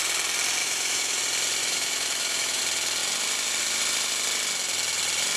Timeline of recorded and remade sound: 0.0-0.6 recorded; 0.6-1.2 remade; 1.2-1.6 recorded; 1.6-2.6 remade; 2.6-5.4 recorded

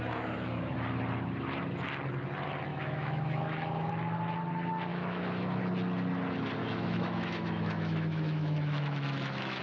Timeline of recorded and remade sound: 0.0-2.7 recorded; 2.7-3.9 remade; 3.9-4.9 recorded; 4.9-5.6 remade; 5.6-6.6 recorded; 6.6-9.6 remade